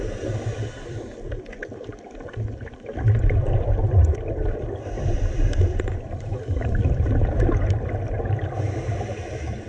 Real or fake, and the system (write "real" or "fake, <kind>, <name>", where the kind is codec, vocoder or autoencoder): fake, vocoder, BigVGAN v2